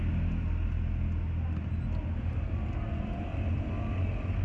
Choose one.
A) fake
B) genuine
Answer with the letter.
B